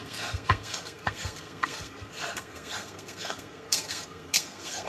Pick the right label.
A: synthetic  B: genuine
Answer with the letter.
A